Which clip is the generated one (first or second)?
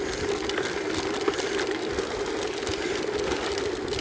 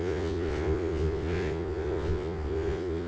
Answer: second